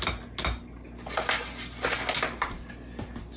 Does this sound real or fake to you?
real